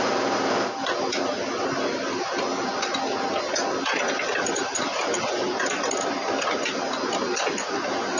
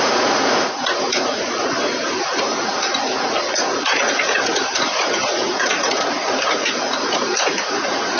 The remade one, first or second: second